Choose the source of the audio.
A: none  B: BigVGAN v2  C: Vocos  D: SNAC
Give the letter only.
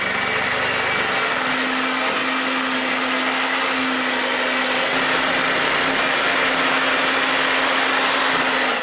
A